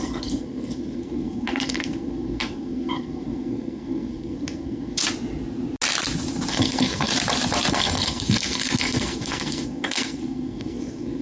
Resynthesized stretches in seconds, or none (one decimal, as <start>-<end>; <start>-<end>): 0.0-5.0; 6.5-7.1; 7.7-11.2